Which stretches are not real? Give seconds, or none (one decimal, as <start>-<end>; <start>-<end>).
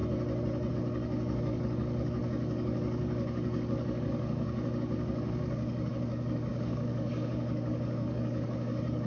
0.7-9.1